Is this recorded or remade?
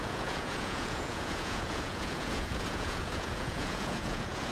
remade